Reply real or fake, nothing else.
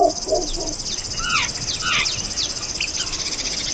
real